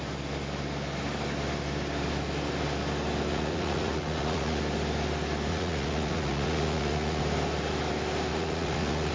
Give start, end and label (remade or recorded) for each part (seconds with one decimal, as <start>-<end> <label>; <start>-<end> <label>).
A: 0.0-3.3 recorded; 3.3-4.6 remade; 4.6-5.5 recorded; 5.5-7.2 remade; 7.2-8.3 recorded; 8.3-9.1 remade